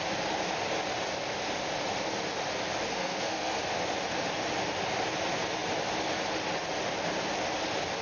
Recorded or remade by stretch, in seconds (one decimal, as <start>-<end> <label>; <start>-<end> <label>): 0.0-2.9 recorded; 2.9-3.6 remade; 3.6-8.0 recorded